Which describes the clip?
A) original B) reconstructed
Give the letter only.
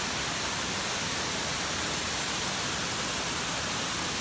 A